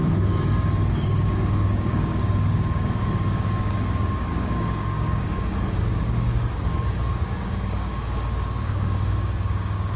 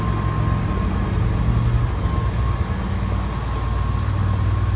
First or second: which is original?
second